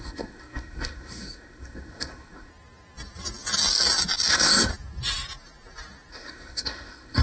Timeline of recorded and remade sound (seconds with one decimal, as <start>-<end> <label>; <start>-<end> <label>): 0.0-2.5 remade; 2.5-4.3 recorded; 4.3-4.7 remade; 4.7-6.1 recorded; 6.1-7.2 remade